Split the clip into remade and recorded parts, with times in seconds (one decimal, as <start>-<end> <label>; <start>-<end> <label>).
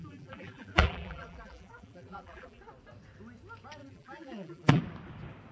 0.0-2.6 remade; 2.6-3.8 recorded; 3.8-4.8 remade; 4.8-5.5 recorded